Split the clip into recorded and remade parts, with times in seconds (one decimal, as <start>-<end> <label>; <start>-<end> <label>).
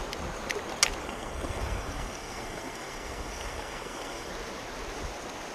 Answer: 0.0-1.0 recorded; 1.0-4.3 remade; 4.3-5.5 recorded